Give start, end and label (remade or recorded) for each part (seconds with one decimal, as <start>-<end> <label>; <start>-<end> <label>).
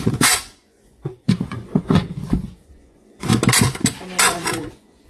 0.0-3.3 remade; 3.3-4.2 recorded; 4.2-5.1 remade